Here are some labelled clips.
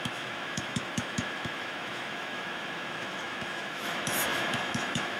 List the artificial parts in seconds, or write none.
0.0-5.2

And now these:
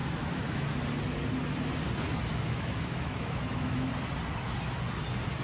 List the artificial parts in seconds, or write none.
0.0-0.7; 2.3-3.9